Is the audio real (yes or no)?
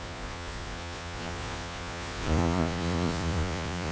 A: no